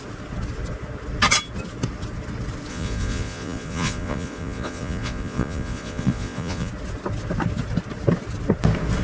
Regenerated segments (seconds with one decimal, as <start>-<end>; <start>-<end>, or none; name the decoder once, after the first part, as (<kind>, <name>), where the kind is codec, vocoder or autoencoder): 2.7-6.7 (vocoder, Vocos)

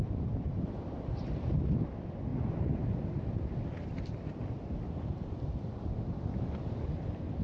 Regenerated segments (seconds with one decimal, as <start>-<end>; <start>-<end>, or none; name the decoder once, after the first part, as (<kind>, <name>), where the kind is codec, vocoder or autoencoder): none

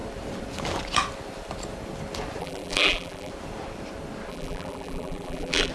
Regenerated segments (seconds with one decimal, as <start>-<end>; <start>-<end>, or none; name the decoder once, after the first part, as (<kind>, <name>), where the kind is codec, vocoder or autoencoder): 2.4-3.3 (vocoder, BigVGAN v2); 4.3-5.7